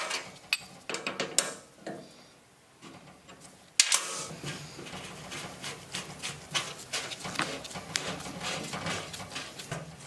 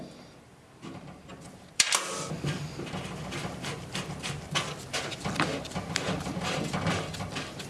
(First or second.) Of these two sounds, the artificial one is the second